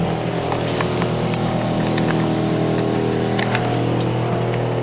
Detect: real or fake real